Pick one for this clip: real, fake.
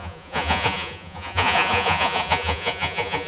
fake